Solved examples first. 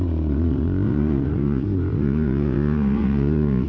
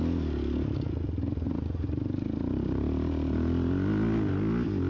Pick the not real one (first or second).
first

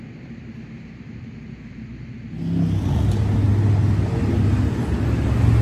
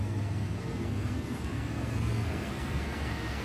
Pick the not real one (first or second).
second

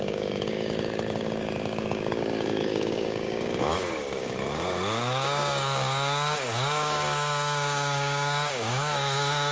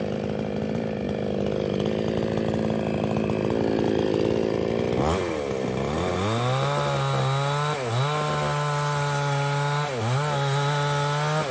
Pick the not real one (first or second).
first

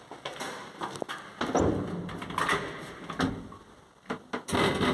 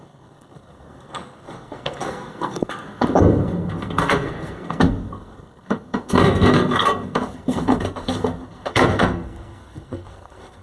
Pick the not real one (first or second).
second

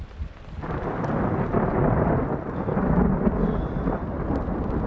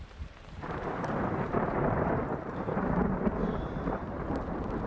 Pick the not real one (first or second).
second